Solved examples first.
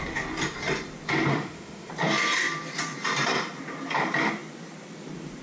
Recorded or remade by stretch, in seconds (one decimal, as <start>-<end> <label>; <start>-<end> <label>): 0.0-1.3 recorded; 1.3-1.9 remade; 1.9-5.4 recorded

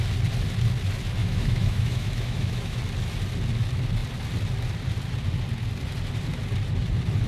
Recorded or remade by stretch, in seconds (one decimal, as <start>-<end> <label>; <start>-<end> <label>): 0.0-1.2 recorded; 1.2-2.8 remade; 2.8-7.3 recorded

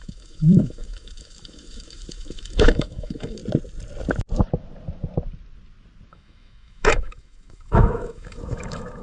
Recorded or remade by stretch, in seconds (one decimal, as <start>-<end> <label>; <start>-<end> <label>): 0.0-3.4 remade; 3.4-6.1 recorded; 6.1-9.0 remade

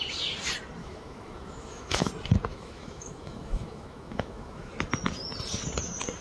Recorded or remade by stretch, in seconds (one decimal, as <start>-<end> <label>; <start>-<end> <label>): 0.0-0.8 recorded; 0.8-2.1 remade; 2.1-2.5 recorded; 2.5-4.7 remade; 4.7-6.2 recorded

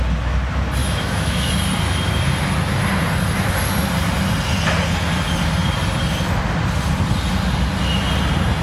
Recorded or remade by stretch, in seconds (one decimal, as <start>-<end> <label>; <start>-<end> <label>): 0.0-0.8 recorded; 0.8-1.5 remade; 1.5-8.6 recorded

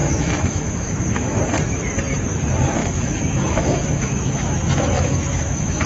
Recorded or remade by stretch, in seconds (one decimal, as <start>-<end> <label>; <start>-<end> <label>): 0.0-1.4 remade; 1.4-2.8 recorded; 2.8-5.9 remade